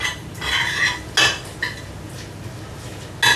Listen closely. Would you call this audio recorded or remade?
recorded